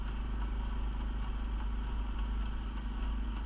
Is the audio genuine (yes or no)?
yes